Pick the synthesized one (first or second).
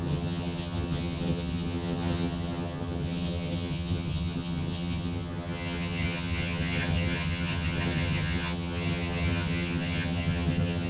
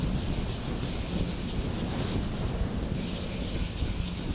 first